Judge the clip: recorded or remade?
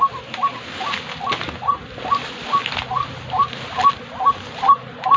remade